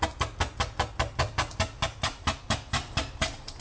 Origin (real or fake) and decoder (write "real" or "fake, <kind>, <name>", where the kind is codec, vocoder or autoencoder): real